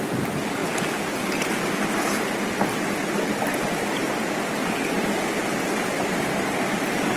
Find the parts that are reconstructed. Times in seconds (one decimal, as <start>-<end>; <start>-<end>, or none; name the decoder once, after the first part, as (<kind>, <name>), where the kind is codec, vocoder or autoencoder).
none